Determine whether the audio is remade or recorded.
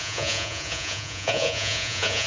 remade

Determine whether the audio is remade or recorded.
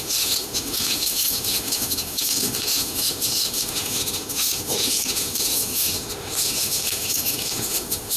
remade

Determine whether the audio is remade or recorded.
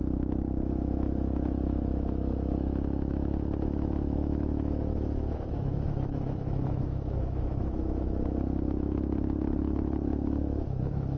remade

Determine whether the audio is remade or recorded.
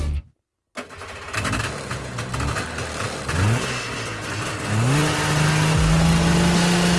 recorded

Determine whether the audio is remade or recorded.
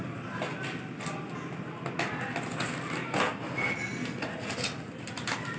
recorded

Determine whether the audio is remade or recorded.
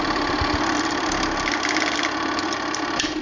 recorded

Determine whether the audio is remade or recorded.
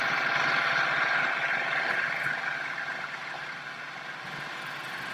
recorded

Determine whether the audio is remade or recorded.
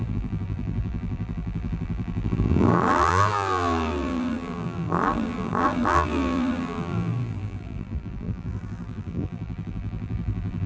remade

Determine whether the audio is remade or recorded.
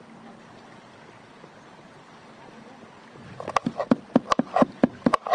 recorded